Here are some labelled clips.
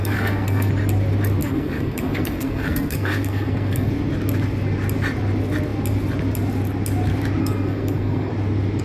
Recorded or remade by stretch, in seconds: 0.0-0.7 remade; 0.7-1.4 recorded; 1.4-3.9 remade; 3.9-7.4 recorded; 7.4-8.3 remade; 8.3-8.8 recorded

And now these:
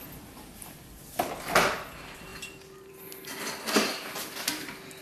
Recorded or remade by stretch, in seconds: 0.0-5.0 recorded

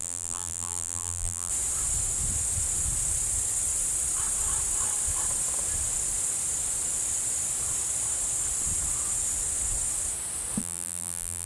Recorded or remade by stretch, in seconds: 0.0-1.5 remade; 1.5-10.6 recorded; 10.6-11.5 remade

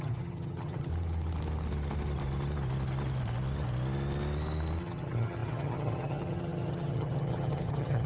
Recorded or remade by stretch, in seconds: 0.0-0.9 remade; 0.9-4.8 recorded; 4.8-8.1 remade